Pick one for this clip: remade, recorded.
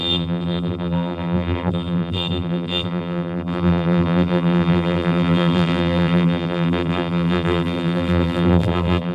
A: remade